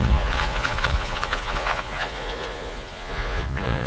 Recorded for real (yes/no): no